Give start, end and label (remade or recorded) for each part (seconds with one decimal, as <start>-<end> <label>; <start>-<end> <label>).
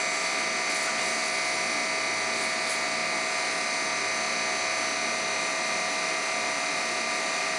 0.0-7.6 recorded